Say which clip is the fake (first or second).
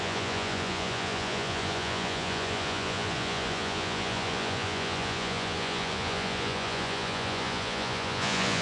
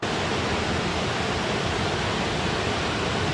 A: first